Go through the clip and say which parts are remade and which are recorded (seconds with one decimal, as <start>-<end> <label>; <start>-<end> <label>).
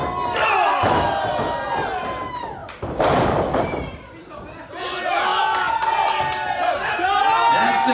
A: 0.0-2.6 recorded; 2.6-4.7 remade; 4.7-7.9 recorded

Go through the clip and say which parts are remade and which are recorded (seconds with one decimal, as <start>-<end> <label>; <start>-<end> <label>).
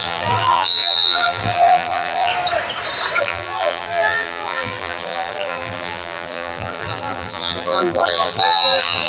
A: 0.0-2.3 remade; 2.3-3.2 recorded; 3.2-9.1 remade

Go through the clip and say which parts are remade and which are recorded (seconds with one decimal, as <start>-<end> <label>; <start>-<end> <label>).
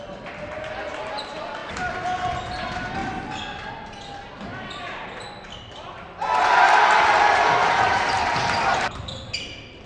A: 0.0-4.5 recorded; 4.5-5.3 remade; 5.3-7.6 recorded; 7.6-8.1 remade; 8.1-9.9 recorded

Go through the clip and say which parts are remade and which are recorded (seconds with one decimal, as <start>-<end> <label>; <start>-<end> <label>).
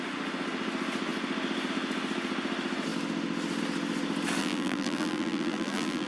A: 0.0-4.4 recorded; 4.4-6.1 remade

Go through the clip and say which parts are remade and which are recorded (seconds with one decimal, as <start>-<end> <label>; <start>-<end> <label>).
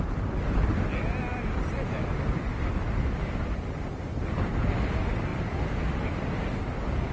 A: 0.0-1.3 recorded; 1.3-2.5 remade; 2.5-5.3 recorded; 5.3-6.5 remade; 6.5-7.1 recorded